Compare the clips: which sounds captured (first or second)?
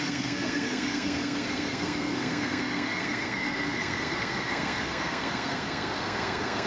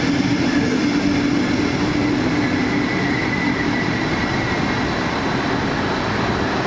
second